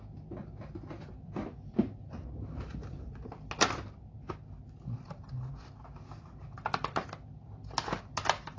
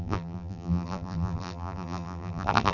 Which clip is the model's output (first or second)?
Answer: second